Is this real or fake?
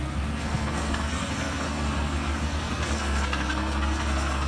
fake